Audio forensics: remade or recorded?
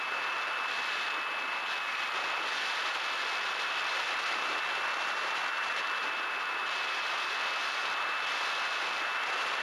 recorded